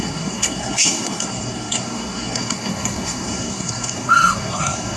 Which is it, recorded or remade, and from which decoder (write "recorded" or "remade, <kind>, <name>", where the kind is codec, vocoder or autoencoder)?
remade, codec, SNAC